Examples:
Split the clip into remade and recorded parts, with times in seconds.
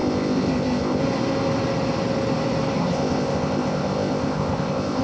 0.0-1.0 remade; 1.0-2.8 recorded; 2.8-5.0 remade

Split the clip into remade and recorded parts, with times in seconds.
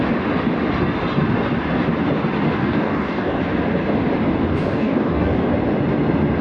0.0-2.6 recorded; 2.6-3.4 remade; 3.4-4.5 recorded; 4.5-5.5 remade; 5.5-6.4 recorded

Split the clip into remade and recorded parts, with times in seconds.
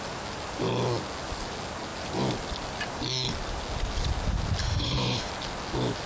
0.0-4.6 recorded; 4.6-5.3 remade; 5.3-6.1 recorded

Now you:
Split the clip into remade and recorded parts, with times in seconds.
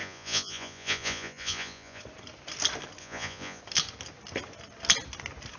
0.0-2.0 remade; 2.0-3.0 recorded; 3.0-3.6 remade; 3.6-5.6 recorded